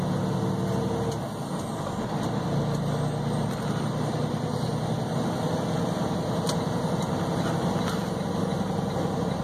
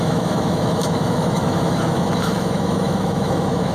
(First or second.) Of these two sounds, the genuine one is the first